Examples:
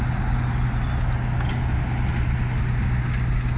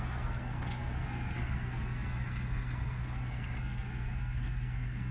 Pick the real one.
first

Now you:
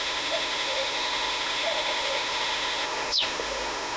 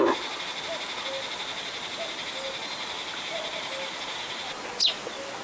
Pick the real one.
second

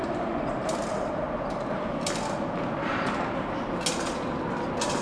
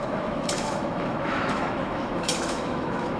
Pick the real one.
first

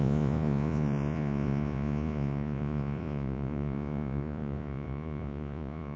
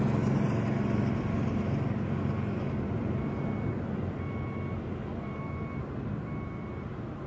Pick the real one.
second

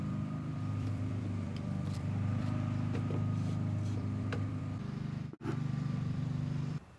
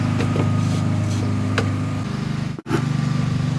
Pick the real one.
second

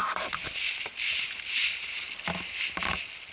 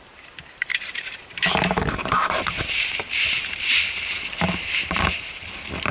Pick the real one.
first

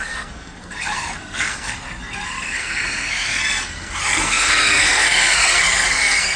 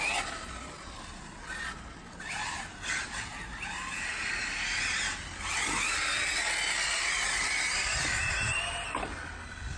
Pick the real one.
second